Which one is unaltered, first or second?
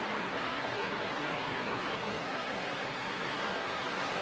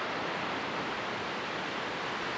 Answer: second